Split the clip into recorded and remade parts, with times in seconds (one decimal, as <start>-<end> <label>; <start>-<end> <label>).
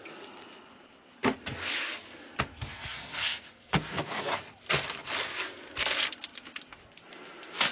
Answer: 0.0-2.5 recorded; 2.5-4.2 remade; 4.2-7.7 recorded